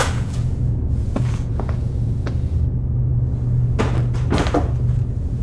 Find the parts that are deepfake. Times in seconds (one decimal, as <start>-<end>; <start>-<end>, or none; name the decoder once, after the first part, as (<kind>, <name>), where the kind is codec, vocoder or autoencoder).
0.0-2.3 (vocoder, Vocos)